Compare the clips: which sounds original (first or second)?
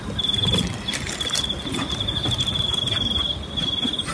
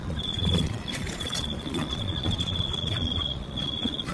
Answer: first